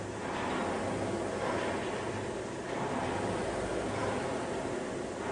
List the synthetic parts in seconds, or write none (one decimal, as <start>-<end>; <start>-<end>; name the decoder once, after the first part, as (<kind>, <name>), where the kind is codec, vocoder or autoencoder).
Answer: none